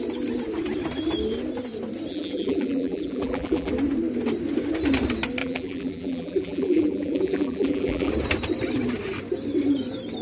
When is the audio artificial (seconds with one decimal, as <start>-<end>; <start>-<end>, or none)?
2.1-3.7; 5.4-8.1